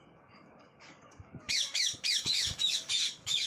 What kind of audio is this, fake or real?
fake